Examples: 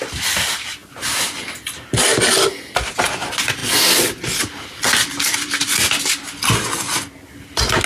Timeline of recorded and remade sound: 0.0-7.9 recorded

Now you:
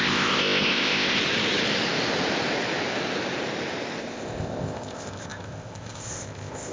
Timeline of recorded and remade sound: 0.0-1.2 remade; 1.2-4.0 recorded; 4.0-6.7 remade

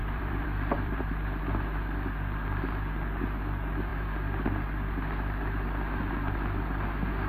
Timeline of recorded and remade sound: 0.0-1.0 remade; 1.0-7.3 recorded

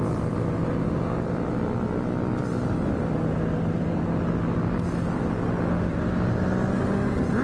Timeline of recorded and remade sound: 0.0-7.4 recorded

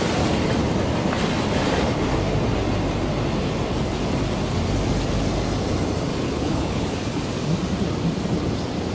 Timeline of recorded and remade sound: 0.0-6.1 recorded; 6.1-7.2 remade; 7.2-8.9 recorded

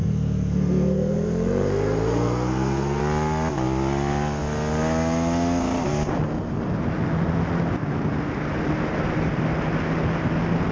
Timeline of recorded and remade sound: 0.0-3.0 remade; 3.0-10.7 recorded

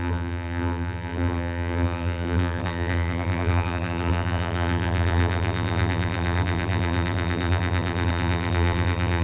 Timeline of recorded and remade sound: 0.0-9.2 remade

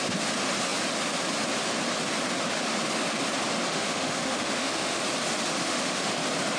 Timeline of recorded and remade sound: 0.0-3.7 recorded; 3.7-5.0 remade; 5.0-5.6 recorded; 5.6-6.1 remade; 6.1-6.6 recorded